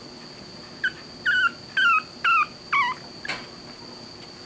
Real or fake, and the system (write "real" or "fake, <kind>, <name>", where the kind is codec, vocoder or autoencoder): real